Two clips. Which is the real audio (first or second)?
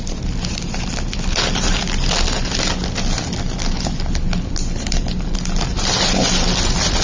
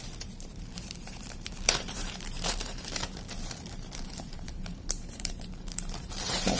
first